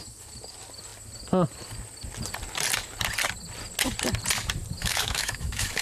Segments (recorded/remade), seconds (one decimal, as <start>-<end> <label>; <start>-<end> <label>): 0.0-4.8 recorded; 4.8-5.8 remade